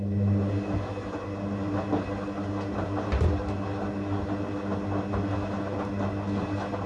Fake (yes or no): no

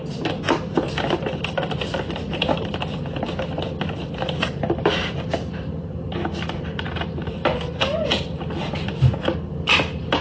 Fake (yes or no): no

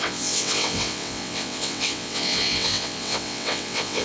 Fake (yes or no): yes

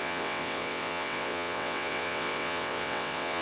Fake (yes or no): yes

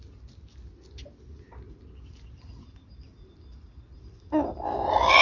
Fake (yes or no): no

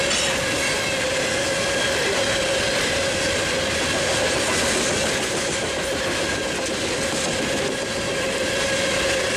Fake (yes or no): no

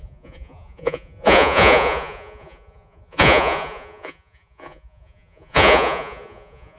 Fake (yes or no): yes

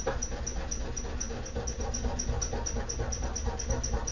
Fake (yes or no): no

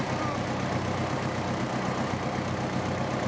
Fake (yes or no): no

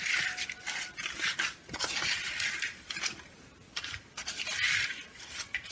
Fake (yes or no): yes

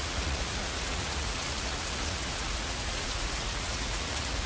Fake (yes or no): yes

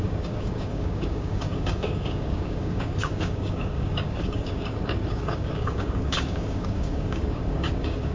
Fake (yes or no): yes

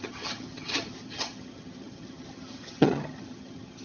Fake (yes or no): yes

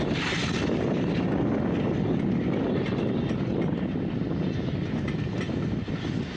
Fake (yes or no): no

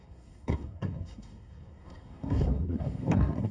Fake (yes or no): yes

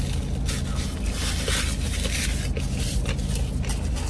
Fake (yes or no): no